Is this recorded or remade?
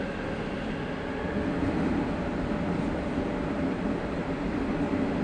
recorded